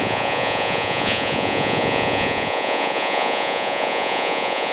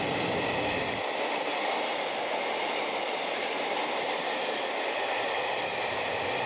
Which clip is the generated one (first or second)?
first